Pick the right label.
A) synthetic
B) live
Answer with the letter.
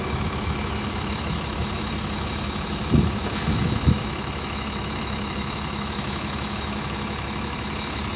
A